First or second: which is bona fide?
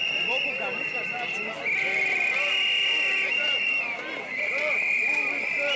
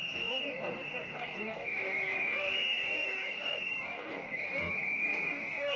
first